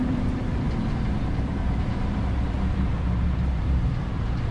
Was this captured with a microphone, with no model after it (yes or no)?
no